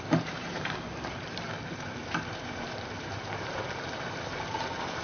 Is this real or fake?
fake